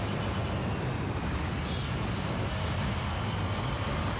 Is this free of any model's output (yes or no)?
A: yes